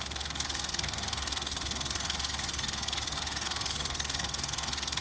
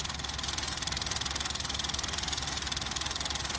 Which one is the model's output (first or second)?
first